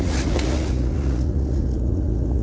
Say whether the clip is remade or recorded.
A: remade